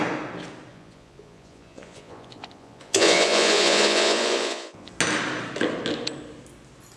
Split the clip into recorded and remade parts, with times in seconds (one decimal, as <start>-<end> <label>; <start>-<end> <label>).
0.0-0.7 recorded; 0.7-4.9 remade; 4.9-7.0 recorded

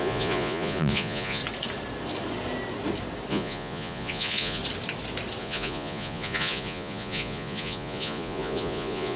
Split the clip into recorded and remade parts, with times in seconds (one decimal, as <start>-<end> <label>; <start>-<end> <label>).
0.0-1.4 remade; 1.4-3.3 recorded; 3.3-4.6 remade; 4.6-5.4 recorded; 5.4-9.2 remade

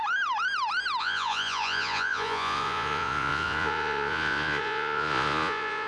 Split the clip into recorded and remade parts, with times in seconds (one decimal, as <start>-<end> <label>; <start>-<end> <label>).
0.0-1.0 recorded; 1.0-5.9 remade

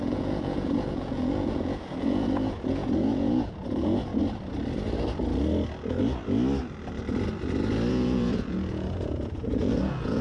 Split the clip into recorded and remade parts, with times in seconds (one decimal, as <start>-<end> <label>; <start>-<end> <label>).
0.0-4.1 remade; 4.1-7.9 recorded; 7.9-10.2 remade

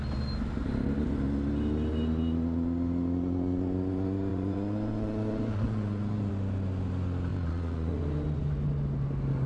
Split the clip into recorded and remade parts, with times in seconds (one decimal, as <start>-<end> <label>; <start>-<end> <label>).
0.0-4.3 recorded; 4.3-6.3 remade; 6.3-7.3 recorded; 7.3-8.0 remade; 8.0-9.5 recorded

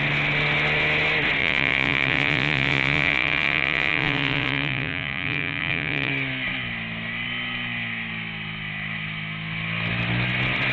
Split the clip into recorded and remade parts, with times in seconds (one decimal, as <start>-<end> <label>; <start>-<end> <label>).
0.0-1.4 recorded; 1.4-6.1 remade; 6.1-10.7 recorded